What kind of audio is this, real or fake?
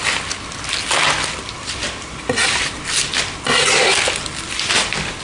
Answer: real